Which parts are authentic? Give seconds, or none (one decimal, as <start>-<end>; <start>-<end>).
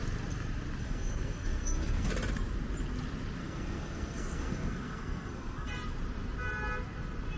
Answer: 0.0-0.8; 2.1-3.4; 5.7-7.4